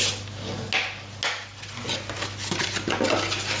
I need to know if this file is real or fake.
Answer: real